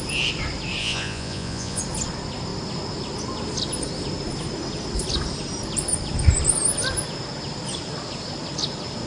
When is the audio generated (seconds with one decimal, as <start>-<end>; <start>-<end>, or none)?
0.8-1.8